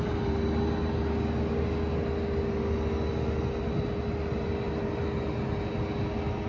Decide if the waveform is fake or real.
real